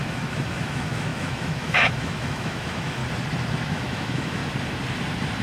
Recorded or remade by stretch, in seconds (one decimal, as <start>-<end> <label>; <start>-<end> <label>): 0.0-3.0 remade; 3.0-3.7 recorded; 3.7-4.4 remade; 4.4-5.4 recorded